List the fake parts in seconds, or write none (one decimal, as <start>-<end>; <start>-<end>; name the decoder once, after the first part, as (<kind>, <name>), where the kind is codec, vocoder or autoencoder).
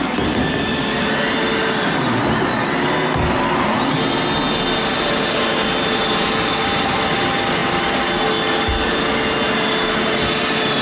none